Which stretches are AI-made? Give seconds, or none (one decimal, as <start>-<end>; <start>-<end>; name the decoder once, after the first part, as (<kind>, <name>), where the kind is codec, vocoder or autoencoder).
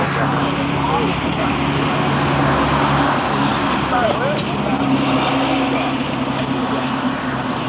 none